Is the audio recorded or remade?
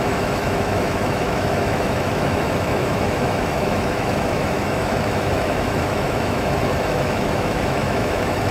remade